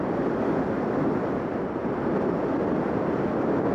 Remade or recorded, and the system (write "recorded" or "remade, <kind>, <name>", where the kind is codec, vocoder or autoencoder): recorded